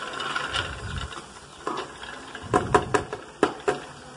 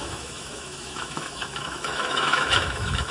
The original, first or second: first